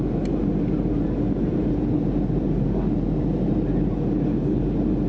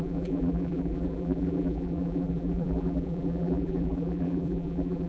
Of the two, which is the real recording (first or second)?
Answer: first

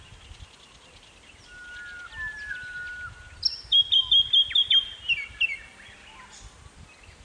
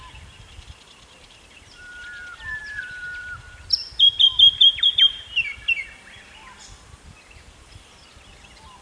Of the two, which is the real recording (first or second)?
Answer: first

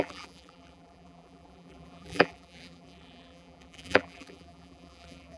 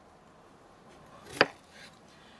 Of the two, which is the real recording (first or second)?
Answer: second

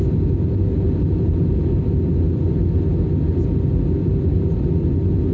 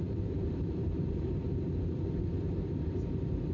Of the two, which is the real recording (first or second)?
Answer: first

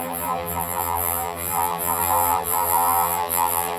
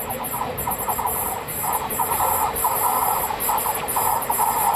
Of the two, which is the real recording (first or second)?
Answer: second